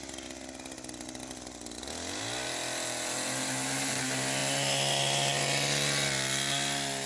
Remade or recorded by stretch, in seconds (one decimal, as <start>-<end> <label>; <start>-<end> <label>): 0.0-7.1 recorded